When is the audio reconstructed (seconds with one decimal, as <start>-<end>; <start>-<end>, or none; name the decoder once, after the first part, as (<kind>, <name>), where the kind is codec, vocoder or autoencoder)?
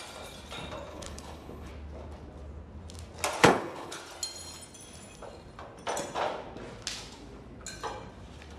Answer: 0.9-1.7 (codec, HILCodec); 3.4-4.0